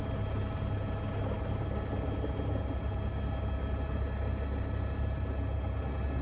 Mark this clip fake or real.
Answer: real